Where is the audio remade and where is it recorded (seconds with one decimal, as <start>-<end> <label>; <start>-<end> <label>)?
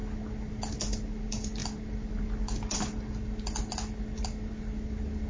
0.0-5.3 recorded